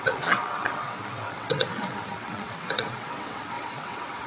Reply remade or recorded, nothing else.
remade